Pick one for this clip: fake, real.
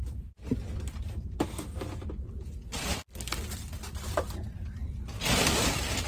real